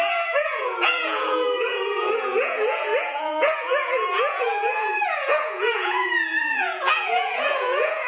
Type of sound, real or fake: fake